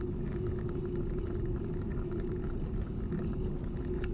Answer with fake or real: real